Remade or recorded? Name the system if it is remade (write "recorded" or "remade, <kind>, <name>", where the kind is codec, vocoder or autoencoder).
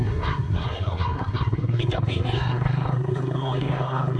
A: remade, codec, SNAC